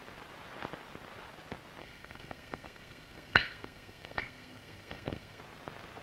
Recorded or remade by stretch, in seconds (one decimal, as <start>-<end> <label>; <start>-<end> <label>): 0.0-1.8 recorded; 1.8-5.4 remade; 5.4-6.0 recorded